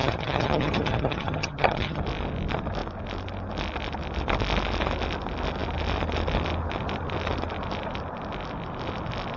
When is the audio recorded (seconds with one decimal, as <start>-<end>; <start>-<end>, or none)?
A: 2.0-9.4